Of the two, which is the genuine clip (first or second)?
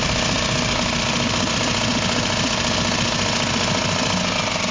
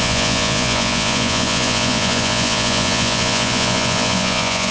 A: first